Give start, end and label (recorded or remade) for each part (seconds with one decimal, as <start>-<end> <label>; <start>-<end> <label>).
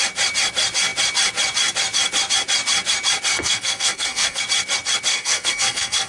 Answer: 0.0-3.3 recorded; 3.3-4.4 remade; 4.4-5.1 recorded; 5.1-6.1 remade